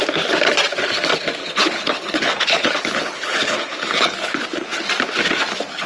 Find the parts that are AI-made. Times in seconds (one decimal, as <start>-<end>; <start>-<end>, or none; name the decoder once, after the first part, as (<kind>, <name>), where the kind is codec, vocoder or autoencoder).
1.4-4.9 (codec, HILCodec)